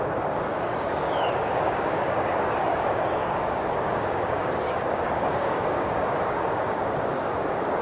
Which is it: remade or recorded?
remade